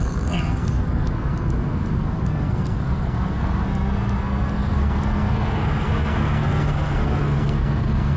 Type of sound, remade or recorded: remade